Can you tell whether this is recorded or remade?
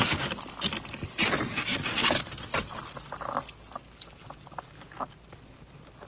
recorded